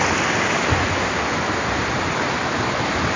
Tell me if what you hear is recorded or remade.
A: recorded